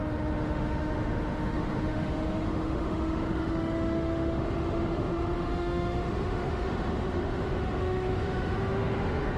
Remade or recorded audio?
remade